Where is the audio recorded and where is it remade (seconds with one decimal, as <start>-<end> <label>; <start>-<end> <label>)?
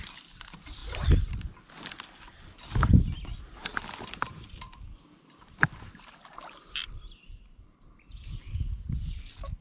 0.0-3.7 recorded; 3.7-8.6 remade; 8.6-9.6 recorded